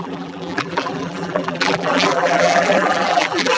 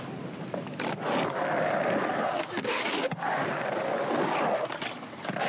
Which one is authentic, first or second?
second